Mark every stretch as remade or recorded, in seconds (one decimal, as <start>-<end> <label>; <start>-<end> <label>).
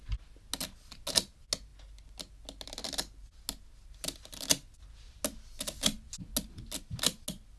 0.0-7.6 recorded